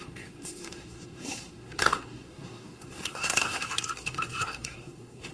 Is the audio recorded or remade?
remade